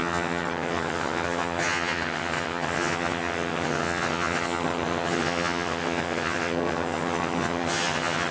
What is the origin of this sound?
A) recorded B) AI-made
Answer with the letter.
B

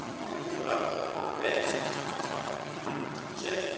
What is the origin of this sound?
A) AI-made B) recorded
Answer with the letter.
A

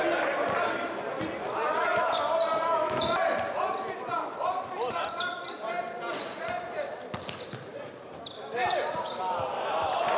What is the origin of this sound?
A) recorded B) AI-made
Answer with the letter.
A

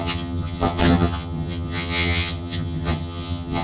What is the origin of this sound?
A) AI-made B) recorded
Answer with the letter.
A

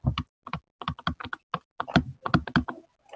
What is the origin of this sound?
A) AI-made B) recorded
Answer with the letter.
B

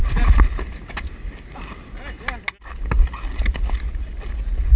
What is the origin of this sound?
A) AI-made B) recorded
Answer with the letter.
B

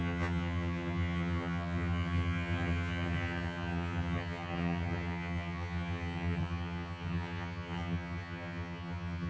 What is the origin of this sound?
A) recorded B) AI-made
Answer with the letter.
B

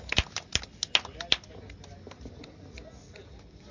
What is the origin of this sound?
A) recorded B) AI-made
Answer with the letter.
A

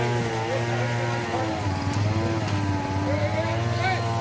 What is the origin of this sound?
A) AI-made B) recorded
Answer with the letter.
B